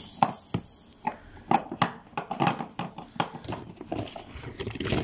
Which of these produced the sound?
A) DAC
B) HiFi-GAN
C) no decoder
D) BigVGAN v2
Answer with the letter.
C